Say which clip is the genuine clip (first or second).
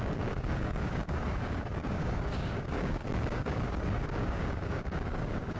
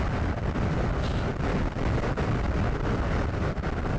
second